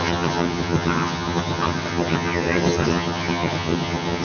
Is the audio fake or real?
fake